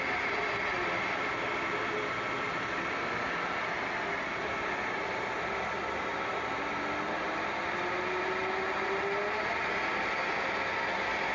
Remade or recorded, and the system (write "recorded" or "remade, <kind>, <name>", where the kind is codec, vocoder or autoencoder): recorded